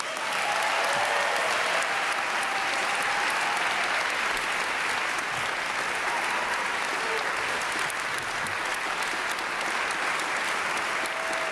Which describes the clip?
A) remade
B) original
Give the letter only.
B